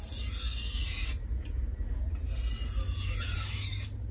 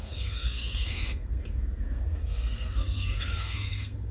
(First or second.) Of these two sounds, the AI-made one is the second